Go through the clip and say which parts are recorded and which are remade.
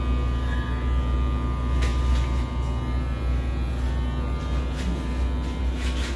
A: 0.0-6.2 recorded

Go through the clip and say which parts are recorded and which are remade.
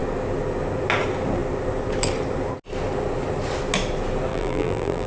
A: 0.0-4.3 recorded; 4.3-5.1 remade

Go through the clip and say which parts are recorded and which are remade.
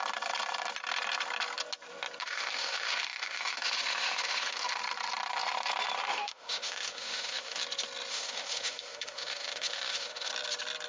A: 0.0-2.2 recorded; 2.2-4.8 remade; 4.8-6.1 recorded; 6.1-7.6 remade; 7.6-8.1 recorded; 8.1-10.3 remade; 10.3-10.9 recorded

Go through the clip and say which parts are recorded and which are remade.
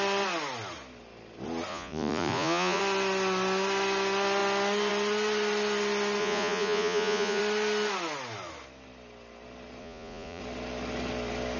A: 0.0-1.7 recorded; 1.7-2.8 remade; 2.8-6.2 recorded; 6.2-7.4 remade; 7.4-9.8 recorded; 9.8-10.4 remade; 10.4-11.6 recorded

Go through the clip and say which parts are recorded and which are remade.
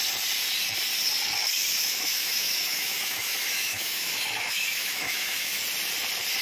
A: 0.0-1.8 recorded; 1.8-5.6 remade; 5.6-6.4 recorded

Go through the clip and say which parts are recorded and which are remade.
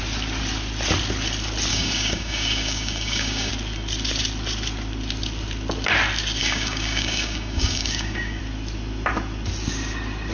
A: 0.0-1.7 recorded; 1.7-3.5 remade; 3.5-6.4 recorded; 6.4-8.4 remade; 8.4-10.3 recorded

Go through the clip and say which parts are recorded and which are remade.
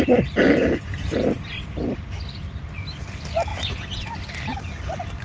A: 0.0-3.5 recorded; 3.5-4.1 remade; 4.1-5.2 recorded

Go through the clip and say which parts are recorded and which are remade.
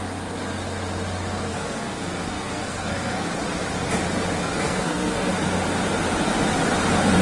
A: 0.0-1.5 recorded; 1.5-3.3 remade; 3.3-4.4 recorded; 4.4-5.3 remade; 5.3-7.2 recorded